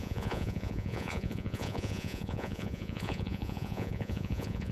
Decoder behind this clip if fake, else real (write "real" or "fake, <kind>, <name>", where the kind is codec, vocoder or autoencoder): fake, vocoder, Vocos